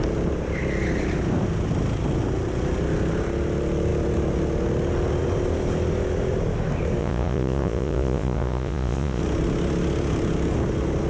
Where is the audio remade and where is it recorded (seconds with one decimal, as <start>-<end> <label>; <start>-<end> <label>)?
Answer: 0.0-7.0 recorded; 7.0-9.2 remade; 9.2-11.1 recorded